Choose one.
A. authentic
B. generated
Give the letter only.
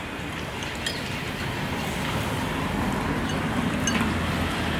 A